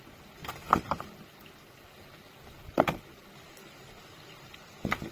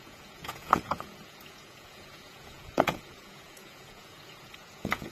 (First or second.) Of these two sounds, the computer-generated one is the second